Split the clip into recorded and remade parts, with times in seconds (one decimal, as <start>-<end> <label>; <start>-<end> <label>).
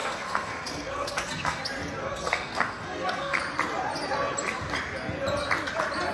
0.0-1.6 remade; 1.6-2.0 recorded; 2.0-3.4 remade; 3.4-6.1 recorded